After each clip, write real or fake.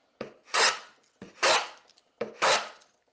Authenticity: real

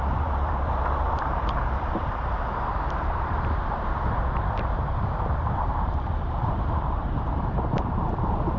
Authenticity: fake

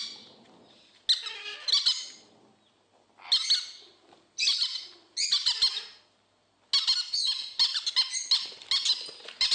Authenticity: real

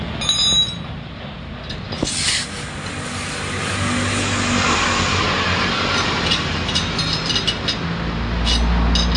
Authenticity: real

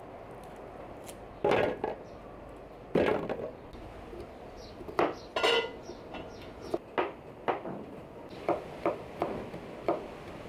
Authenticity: real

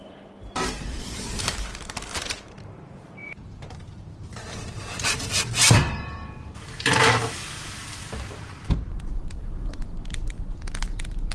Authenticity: fake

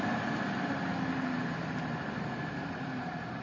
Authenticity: fake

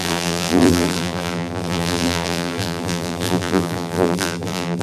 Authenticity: fake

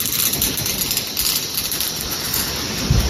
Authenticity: real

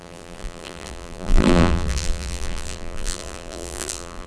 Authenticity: fake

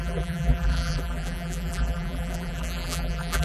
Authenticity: fake